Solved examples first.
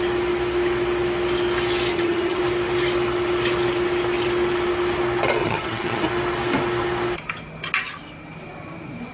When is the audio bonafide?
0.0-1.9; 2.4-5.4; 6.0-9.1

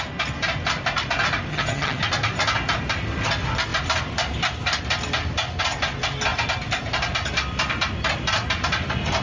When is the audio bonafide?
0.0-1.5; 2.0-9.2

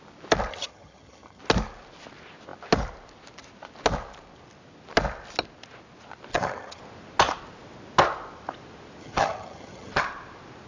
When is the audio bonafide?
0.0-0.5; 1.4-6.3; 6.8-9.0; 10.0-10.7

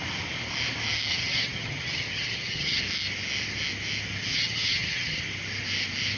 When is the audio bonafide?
0.0-1.1; 2.8-4.3; 5.2-6.2

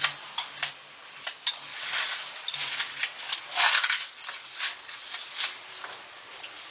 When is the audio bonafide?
0.0-6.7

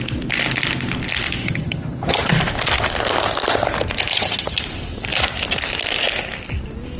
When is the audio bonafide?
0.0-1.4; 2.3-4.1; 4.6-7.0